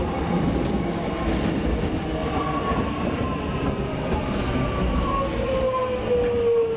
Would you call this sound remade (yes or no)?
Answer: no